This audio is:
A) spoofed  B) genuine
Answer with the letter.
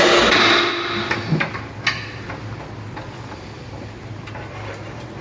B